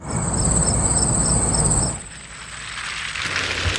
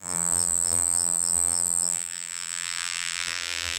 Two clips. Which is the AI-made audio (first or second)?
second